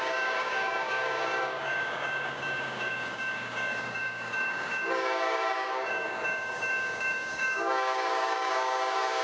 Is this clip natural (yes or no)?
no